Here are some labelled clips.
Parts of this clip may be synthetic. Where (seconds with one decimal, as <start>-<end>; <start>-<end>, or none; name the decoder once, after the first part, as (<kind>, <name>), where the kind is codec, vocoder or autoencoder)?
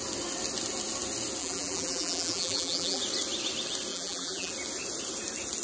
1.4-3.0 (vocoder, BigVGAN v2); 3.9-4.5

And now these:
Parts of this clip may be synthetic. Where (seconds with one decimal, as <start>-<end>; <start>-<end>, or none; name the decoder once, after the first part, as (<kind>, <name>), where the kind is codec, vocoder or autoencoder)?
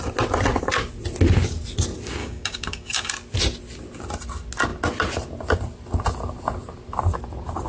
2.2-3.1 (codec, DAC)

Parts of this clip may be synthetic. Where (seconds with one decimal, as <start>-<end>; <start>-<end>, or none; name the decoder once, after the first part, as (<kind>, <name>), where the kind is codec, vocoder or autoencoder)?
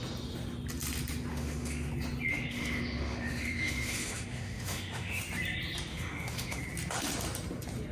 1.3-1.9 (autoencoder, DAC-VAE); 2.3-5.2; 5.9-6.6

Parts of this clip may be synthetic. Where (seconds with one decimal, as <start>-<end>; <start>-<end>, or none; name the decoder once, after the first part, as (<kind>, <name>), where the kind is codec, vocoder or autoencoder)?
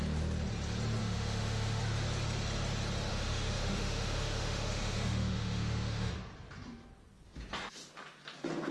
1.0-1.8 (autoencoder, DAC-VAE); 3.1-6.1